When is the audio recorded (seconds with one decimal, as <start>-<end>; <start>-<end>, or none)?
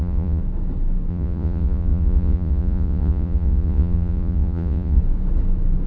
0.4-1.1; 5.0-5.9